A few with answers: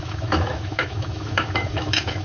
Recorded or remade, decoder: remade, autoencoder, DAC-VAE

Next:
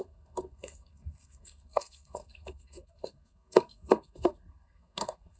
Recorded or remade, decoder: remade, codec, SNAC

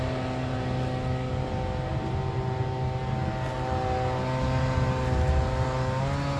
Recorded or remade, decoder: recorded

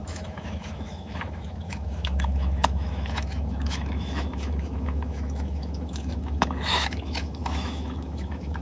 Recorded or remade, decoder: remade, autoencoder, DAC-VAE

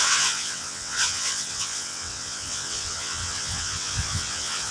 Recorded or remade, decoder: remade, vocoder, WaveNeXt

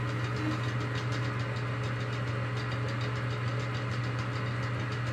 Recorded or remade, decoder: recorded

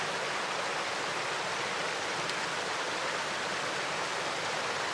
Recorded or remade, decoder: recorded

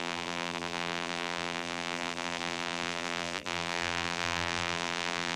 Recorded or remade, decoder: remade, vocoder, BigVGAN v2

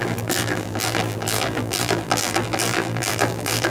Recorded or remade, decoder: remade, vocoder, BigVGAN v2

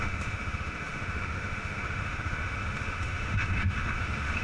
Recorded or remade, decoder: remade, autoencoder, DAC-VAE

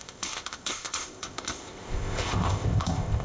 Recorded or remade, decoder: remade, codec, ZipCodec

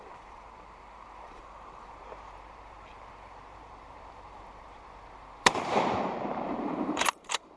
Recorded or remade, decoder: remade, vocoder, BigVGAN v2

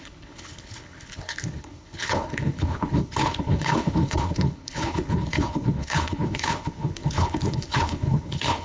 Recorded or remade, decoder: remade, codec, HILCodec